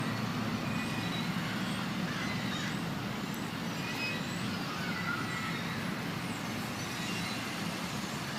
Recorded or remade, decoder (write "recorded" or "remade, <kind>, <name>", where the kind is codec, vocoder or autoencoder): recorded